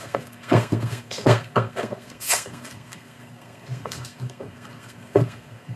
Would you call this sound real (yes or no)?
no